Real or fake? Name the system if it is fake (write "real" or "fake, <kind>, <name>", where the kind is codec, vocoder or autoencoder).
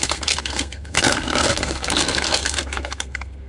fake, codec, SNAC